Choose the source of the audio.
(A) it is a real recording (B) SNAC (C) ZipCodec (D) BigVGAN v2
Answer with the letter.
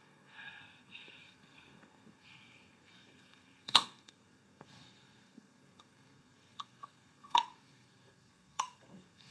B